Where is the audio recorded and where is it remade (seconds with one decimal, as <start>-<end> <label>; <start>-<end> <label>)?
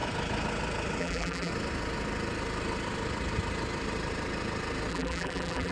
0.0-1.0 recorded; 1.0-1.5 remade; 1.5-4.9 recorded; 4.9-5.7 remade